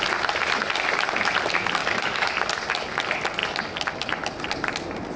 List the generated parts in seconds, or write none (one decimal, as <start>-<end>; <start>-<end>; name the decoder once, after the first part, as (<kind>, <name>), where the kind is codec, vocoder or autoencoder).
1.8-2.3 (codec, DAC)

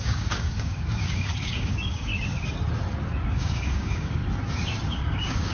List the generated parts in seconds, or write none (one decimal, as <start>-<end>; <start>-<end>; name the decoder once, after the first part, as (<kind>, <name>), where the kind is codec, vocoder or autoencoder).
0.0-2.1 (codec, DAC); 3.3-4.2; 4.9-5.5

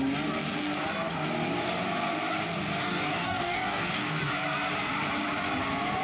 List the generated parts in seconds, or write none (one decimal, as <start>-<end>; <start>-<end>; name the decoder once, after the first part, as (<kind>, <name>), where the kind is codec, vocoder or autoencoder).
2.8-4.2 (codec, DAC)

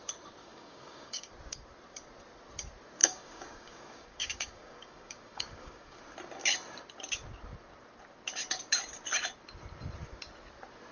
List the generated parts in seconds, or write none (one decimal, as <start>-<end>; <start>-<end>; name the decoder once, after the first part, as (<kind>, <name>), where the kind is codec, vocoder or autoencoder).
0.4-1.3 (codec, DAC); 3.0-6.0

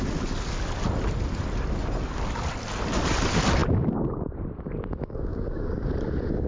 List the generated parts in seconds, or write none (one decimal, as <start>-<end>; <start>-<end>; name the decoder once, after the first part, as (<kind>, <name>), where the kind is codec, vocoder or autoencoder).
5.3-5.9 (codec, DAC)

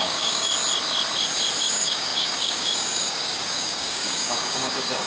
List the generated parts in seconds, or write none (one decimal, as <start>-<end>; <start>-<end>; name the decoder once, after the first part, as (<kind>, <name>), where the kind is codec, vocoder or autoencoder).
0.0-0.5 (codec, DAC); 1.6-5.1

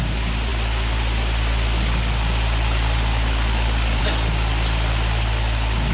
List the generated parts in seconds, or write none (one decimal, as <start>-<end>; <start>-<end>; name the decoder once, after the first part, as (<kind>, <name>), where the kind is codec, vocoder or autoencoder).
none

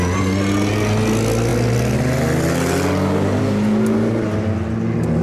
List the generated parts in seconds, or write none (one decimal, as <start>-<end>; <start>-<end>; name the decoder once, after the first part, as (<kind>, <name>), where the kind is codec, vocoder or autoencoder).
none